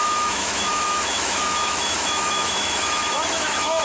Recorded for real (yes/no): no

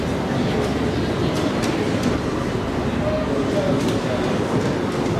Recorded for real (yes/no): yes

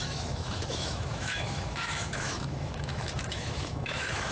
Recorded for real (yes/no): no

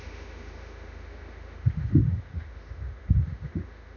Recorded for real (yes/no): no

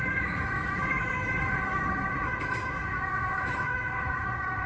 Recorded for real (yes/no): no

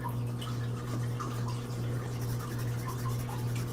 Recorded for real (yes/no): yes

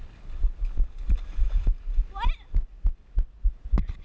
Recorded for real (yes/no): yes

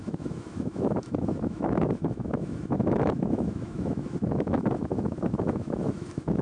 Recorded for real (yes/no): no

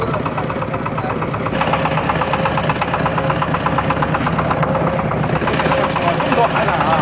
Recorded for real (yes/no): yes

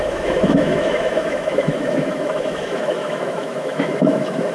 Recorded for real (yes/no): no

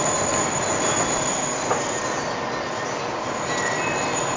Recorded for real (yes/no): yes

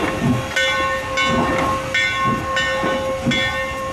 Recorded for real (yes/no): yes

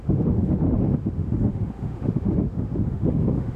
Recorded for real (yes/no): no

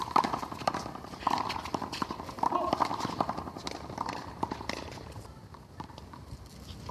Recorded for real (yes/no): yes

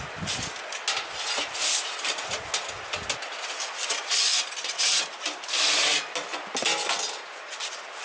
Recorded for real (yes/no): yes